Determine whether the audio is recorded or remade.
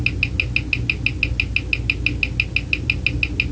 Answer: recorded